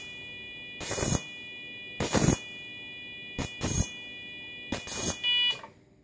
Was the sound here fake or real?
real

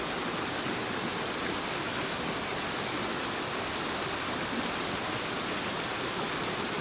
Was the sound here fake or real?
real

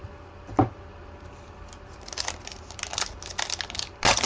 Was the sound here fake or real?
real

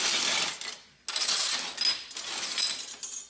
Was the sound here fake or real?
real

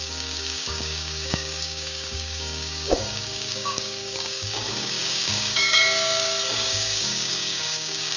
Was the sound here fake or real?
fake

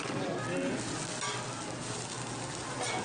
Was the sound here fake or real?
real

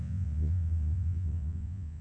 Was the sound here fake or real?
fake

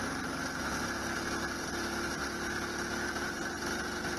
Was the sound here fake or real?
real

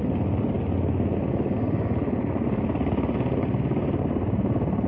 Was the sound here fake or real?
real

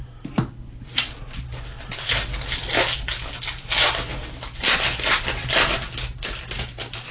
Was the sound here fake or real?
real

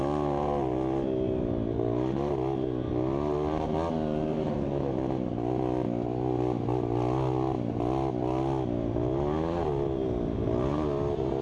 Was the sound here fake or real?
real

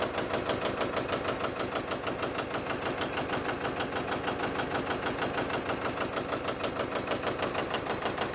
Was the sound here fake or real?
real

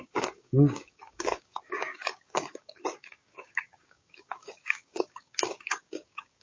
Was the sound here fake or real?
fake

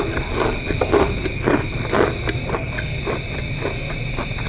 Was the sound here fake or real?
fake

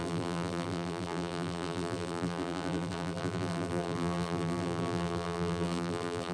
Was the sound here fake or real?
fake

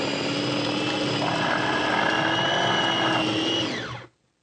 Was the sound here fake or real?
real